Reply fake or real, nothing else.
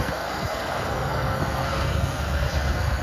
fake